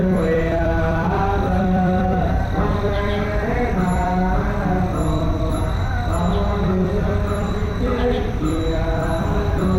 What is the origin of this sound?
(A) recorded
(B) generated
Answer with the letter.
B